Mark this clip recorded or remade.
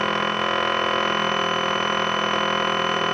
recorded